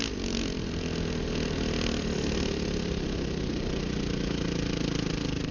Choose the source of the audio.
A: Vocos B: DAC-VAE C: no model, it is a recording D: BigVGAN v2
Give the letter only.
C